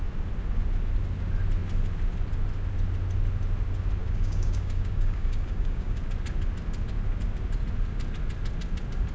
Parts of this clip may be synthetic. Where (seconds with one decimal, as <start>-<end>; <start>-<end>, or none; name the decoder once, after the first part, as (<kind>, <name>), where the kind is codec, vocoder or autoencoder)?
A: 4.0-6.0 (codec, DAC)